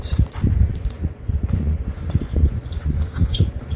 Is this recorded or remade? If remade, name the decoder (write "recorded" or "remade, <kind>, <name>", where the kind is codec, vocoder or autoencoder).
remade, vocoder, Vocos